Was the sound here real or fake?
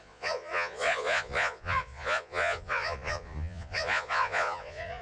fake